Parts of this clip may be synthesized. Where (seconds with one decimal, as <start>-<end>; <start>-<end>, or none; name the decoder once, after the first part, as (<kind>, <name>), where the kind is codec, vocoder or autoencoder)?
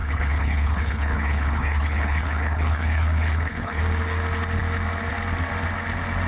0.0-3.8 (codec, HILCodec)